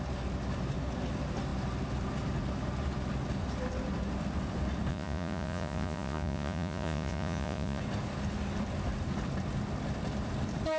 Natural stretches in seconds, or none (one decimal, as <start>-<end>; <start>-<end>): 0.0-4.9; 7.8-10.8